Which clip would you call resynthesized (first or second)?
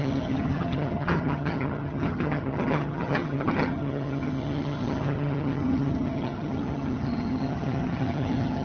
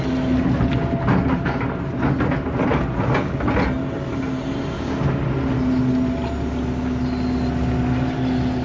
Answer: first